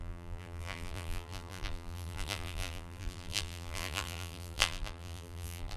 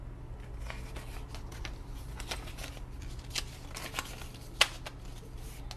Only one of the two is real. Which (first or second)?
second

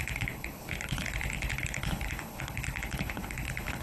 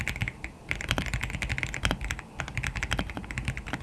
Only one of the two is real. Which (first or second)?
second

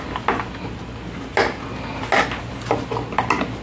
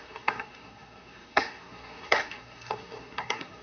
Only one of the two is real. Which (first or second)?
first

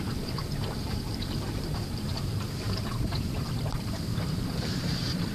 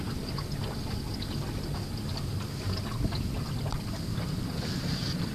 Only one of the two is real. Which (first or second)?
second